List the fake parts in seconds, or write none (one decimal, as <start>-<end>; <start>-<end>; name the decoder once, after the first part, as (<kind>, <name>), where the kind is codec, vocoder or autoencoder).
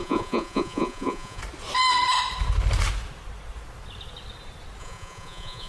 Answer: 0.0-1.4 (vocoder, Vocos); 4.8-5.7